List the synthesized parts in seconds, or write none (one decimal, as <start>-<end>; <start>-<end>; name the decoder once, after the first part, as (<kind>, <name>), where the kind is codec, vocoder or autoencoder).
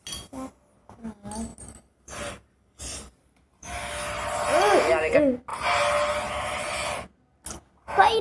1.5-2.3 (vocoder, BigVGAN v2)